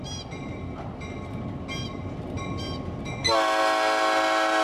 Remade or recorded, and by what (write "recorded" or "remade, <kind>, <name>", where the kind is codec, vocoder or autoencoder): recorded